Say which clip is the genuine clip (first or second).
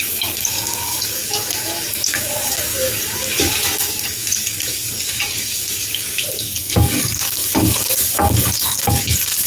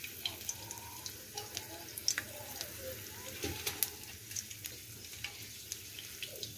second